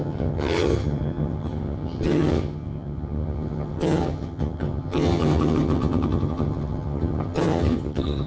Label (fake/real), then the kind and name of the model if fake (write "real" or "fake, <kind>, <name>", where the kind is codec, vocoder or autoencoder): fake, vocoder, HiFi-GAN